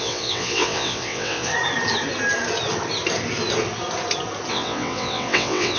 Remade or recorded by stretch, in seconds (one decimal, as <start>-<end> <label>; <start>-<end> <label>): 0.0-1.5 remade; 1.5-4.5 recorded; 4.5-5.8 remade